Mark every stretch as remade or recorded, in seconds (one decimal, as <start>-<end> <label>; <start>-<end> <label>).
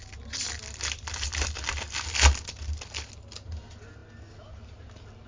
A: 0.0-5.3 recorded